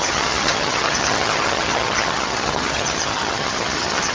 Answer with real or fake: fake